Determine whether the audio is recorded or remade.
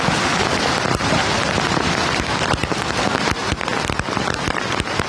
recorded